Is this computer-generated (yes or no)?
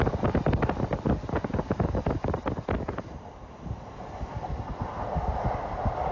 no